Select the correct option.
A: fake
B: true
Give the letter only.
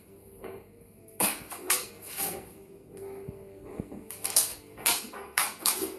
A